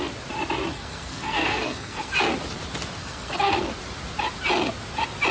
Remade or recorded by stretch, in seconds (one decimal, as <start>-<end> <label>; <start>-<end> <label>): 0.0-0.7 recorded; 0.7-2.1 remade; 2.1-3.0 recorded; 3.0-3.7 remade; 3.7-5.3 recorded